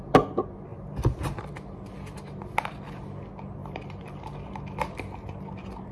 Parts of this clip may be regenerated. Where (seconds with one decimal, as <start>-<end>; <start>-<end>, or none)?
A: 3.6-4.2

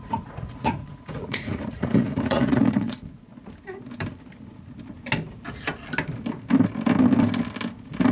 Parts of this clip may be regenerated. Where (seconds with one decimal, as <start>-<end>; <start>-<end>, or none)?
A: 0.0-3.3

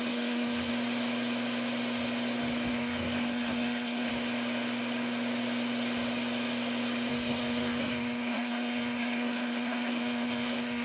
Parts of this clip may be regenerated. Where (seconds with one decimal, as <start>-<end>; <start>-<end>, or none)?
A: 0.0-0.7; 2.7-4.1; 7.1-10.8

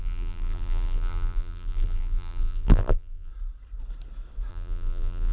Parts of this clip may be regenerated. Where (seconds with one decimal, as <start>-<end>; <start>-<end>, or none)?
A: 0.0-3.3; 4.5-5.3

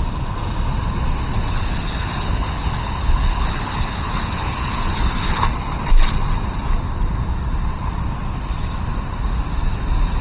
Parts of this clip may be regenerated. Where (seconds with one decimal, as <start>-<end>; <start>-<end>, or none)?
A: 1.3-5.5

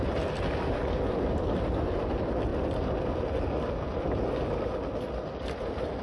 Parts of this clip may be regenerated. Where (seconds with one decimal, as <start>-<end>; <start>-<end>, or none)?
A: none

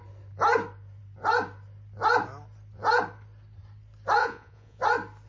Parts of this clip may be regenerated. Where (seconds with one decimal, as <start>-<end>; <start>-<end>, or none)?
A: 4.2-4.8

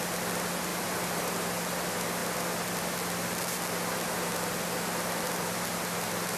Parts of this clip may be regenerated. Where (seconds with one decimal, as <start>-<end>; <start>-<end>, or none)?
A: 0.7-1.2